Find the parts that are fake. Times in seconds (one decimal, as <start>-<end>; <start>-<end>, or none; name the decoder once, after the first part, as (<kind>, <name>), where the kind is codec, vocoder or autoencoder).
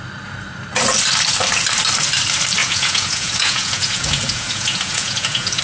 2.6-5.6 (vocoder, Vocos)